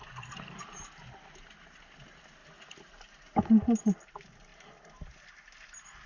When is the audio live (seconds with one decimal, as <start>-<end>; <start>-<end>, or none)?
0.0-6.1